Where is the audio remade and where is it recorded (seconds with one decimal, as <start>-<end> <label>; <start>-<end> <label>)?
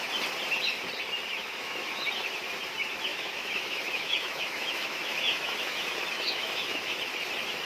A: 0.0-1.4 recorded; 1.4-2.0 remade; 2.0-3.1 recorded; 3.1-7.1 remade; 7.1-7.7 recorded